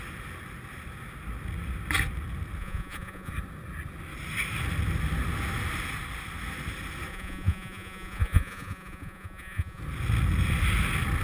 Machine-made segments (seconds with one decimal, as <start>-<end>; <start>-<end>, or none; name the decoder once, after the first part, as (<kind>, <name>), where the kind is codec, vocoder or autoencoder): 2.6-3.3 (vocoder, Vocos); 7.1-9.8